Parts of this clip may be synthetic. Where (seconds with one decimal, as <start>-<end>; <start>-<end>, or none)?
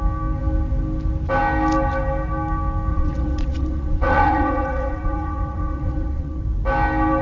2.9-6.4